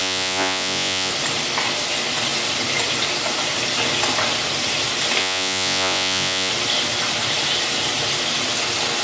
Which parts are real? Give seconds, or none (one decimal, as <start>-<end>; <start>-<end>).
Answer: 1.1-5.2; 6.5-9.0

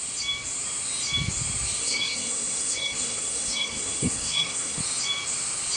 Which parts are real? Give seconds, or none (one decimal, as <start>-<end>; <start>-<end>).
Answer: 0.0-1.8; 4.8-5.8

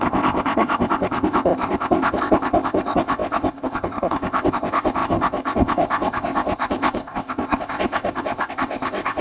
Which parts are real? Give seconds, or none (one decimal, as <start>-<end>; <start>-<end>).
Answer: none

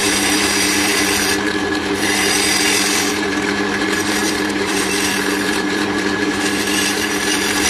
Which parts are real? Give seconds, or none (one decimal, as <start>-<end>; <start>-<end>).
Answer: none

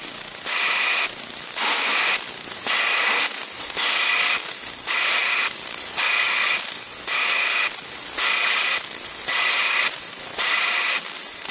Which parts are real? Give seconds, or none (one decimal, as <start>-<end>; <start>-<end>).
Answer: 0.0-11.5